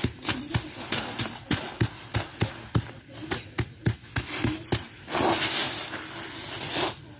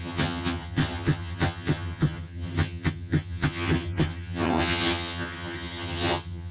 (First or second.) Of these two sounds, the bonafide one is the first